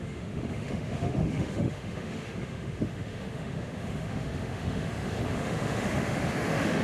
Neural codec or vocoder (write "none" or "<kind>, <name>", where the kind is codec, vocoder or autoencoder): autoencoder, DAC-VAE